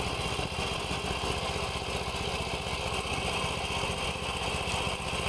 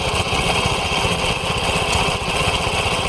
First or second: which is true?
first